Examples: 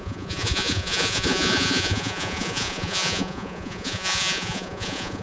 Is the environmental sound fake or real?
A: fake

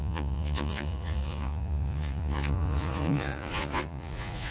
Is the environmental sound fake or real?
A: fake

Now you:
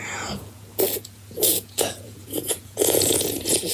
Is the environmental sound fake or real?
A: fake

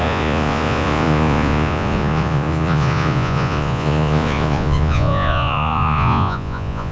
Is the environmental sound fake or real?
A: fake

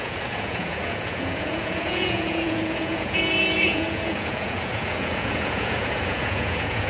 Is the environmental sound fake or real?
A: fake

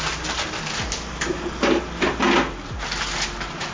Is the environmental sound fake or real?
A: real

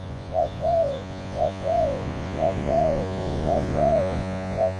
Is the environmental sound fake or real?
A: fake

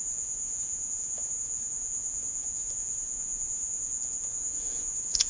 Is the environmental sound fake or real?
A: fake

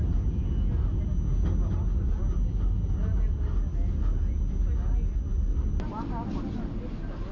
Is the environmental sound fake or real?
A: real